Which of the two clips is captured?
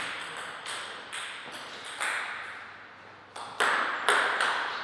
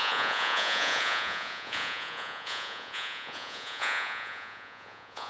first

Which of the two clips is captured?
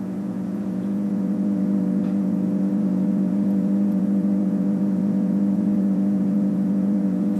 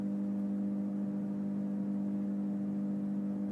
second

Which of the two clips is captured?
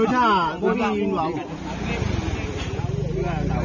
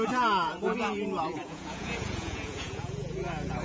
first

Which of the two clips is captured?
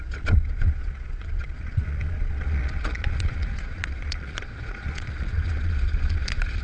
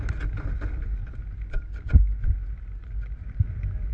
second